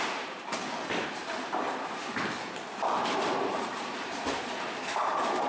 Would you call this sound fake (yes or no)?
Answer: yes